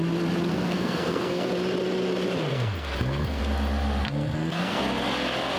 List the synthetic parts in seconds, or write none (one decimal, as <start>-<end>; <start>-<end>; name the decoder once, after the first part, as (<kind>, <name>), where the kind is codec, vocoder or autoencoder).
0.5-1.5 (codec, SNAC); 2.5-3.4; 4.0-4.8